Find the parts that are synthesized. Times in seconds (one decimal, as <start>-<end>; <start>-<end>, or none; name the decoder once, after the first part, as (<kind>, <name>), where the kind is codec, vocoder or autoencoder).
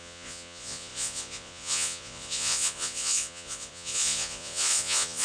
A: 0.0-5.2 (vocoder, Vocos)